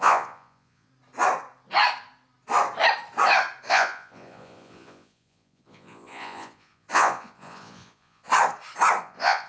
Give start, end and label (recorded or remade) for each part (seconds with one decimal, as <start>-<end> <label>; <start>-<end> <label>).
0.0-0.9 remade; 0.9-3.7 recorded; 3.7-8.3 remade; 8.3-9.0 recorded; 9.0-9.5 remade

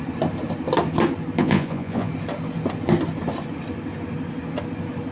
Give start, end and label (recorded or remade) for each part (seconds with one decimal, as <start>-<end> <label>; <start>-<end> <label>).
0.0-1.4 recorded; 1.4-2.1 remade; 2.1-5.1 recorded

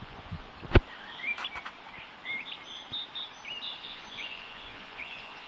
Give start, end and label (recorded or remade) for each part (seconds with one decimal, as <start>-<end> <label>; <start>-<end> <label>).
0.0-0.5 remade; 0.5-3.8 recorded; 3.8-5.5 remade

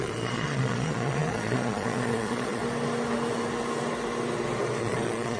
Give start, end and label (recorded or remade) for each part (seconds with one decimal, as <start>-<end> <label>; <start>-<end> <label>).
0.0-2.6 remade; 2.6-4.8 recorded; 4.8-5.4 remade

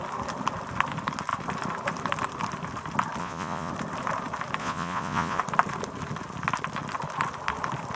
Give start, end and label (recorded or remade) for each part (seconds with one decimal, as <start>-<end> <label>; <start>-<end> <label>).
0.0-3.2 recorded; 3.2-3.7 remade; 3.7-4.6 recorded; 4.6-5.4 remade; 5.4-8.0 recorded

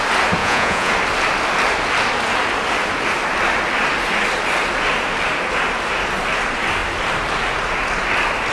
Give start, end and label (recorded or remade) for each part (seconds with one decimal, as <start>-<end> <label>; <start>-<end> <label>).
0.0-0.4 recorded; 0.4-0.9 remade; 0.9-8.5 recorded